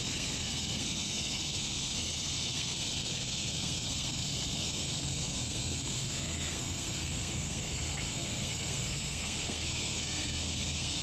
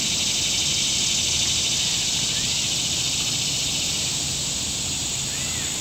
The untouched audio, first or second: second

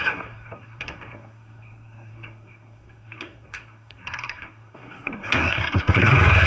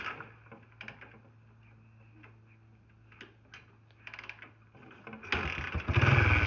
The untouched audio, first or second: second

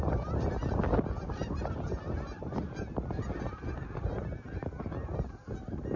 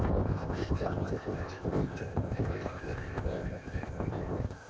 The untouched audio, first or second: first